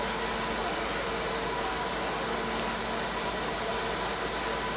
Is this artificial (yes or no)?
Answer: no